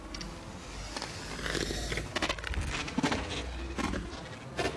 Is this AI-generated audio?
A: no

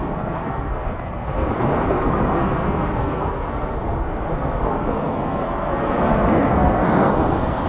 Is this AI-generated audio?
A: yes